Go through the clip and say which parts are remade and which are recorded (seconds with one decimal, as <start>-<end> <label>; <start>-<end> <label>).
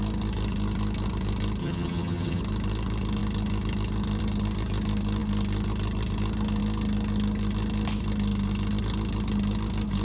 0.0-1.6 recorded; 1.6-2.4 remade; 2.4-10.0 recorded